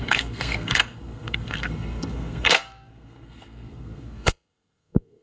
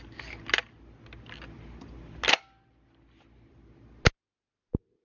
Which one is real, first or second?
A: second